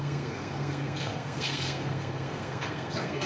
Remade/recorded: remade